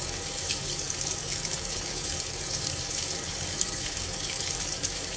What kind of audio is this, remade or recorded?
remade